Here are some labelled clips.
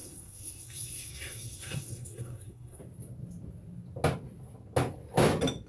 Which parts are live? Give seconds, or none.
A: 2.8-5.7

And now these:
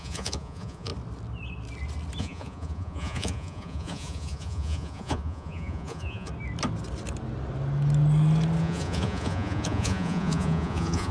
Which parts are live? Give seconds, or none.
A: 0.9-2.2; 6.3-8.6

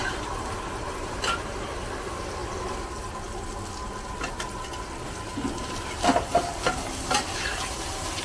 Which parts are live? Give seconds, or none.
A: 0.0-8.2

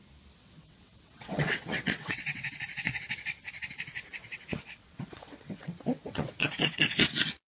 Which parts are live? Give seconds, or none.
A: 0.0-0.4; 2.6-4.2; 6.9-7.5

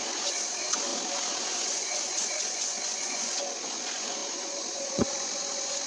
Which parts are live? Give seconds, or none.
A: 0.9-1.4

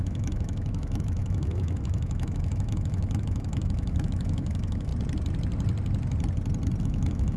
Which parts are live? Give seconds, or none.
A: 4.9-6.8

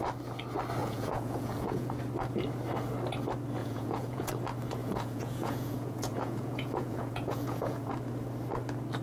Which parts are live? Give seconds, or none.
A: 0.0-0.8; 1.9-3.6; 4.3-4.8; 7.9-9.0